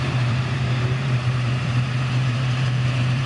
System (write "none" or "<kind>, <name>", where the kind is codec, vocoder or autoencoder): vocoder, BigVGAN v2